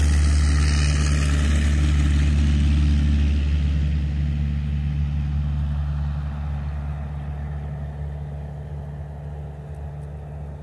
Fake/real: real